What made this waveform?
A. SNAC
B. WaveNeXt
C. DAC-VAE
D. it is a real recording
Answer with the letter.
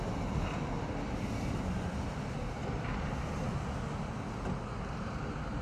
D